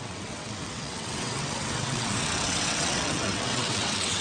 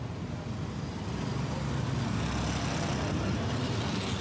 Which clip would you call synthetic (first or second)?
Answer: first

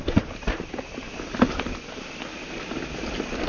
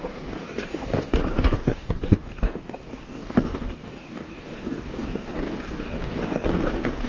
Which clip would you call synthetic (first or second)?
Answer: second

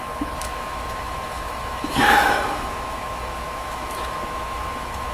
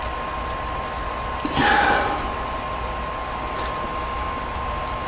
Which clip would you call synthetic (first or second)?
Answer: first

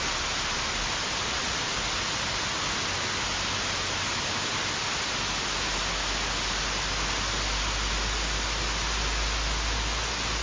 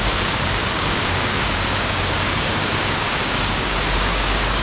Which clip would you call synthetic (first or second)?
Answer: second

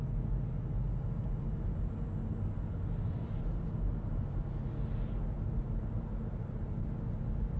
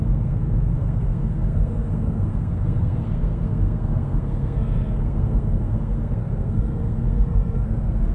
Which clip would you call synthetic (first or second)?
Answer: second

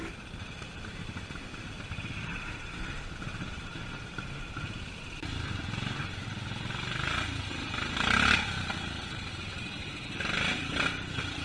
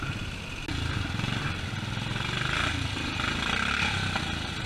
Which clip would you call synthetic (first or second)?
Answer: first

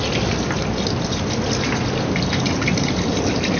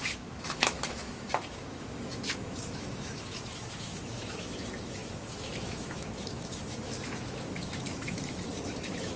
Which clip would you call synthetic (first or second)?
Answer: second